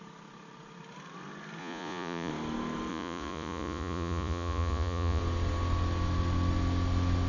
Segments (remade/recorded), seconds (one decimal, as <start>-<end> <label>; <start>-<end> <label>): 0.0-1.6 recorded; 1.6-2.3 remade; 2.3-2.9 recorded; 2.9-5.2 remade; 5.2-7.3 recorded